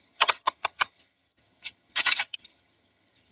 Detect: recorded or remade remade